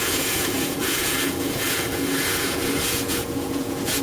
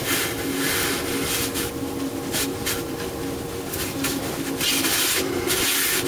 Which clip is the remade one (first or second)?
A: first